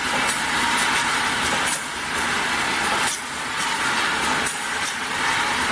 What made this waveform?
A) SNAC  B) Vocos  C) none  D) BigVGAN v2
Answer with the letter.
C